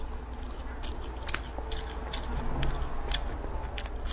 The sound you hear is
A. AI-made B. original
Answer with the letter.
B